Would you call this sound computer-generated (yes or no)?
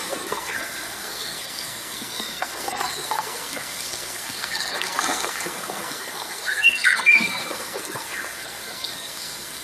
yes